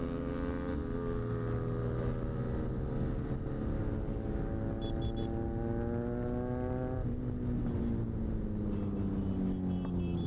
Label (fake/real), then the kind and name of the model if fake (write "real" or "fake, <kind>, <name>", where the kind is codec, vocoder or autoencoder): real